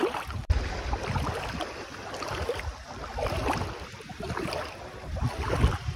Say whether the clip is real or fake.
real